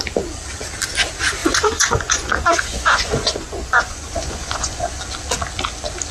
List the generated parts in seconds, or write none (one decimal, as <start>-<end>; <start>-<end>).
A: 1.4-5.0